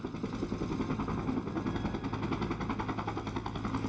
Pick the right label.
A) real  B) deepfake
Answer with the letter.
A